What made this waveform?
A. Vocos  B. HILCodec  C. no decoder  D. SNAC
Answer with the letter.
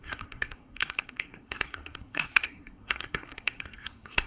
D